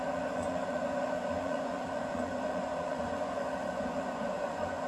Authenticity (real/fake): fake